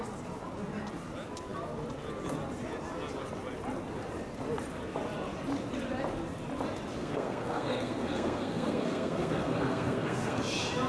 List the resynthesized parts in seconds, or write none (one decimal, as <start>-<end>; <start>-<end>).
7.0-10.4